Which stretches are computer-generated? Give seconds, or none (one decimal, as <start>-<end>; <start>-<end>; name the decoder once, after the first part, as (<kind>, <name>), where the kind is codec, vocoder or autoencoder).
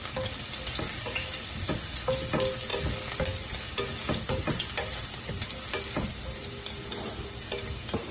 none